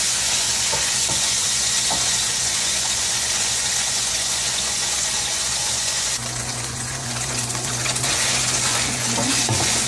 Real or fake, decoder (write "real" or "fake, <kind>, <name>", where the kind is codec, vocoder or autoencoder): fake, vocoder, Vocos